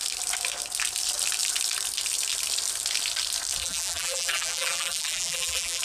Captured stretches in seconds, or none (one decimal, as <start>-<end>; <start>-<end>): 0.0-3.6